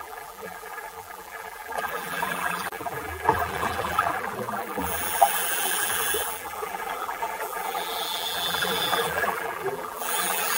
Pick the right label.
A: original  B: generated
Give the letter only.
B